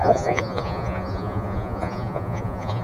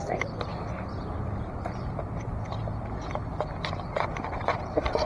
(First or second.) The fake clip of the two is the first